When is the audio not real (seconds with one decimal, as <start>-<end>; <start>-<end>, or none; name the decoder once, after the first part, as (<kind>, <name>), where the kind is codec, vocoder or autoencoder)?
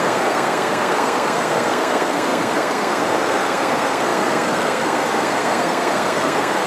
0.0-6.7 (codec, SNAC)